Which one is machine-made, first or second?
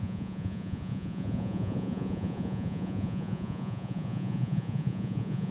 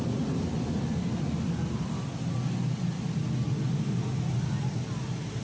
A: first